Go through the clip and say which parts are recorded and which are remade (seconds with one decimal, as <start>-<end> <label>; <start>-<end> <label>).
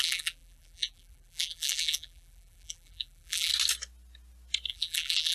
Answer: 0.0-3.5 remade; 3.5-4.7 recorded; 4.7-5.3 remade